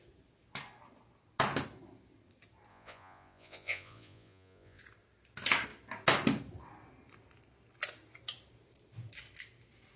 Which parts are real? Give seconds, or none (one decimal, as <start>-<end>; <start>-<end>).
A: 0.0-2.7; 4.8-10.0